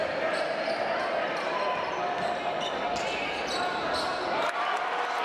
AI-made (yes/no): no